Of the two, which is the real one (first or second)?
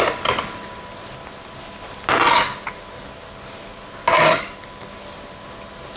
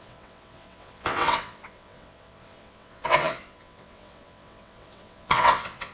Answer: first